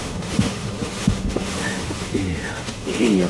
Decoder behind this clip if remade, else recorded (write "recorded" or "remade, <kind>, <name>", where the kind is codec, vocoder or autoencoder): remade, autoencoder, DAC-VAE